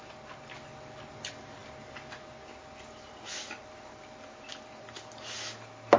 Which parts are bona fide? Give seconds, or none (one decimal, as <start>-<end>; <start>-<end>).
0.0-6.0